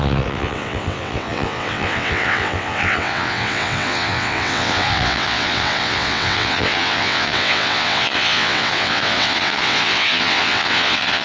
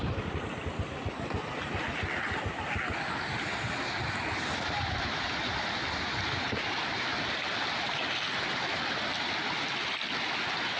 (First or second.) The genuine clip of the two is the second